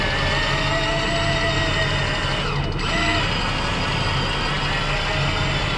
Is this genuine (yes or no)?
yes